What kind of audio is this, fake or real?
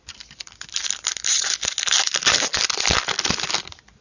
real